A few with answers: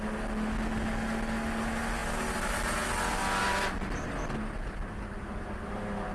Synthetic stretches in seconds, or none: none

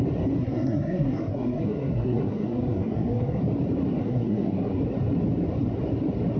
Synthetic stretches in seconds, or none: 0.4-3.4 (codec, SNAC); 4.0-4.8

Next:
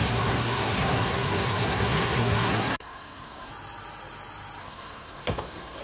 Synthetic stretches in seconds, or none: 0.0-3.5 (codec, SNAC); 4.6-5.8

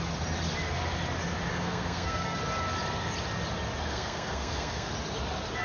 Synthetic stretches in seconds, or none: 1.5-2.4 (codec, SNAC); 3.8-4.9

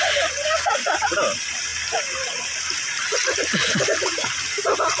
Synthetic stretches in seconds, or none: none

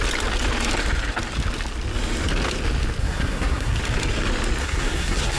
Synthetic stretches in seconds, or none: 3.0-3.8 (codec, SNAC); 4.6-5.4

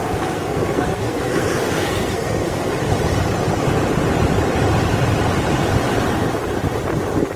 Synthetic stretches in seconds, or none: 0.0-2.7 (codec, SNAC)